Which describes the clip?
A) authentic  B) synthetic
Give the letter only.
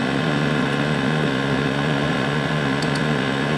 B